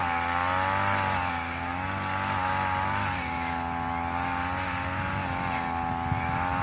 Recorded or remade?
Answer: recorded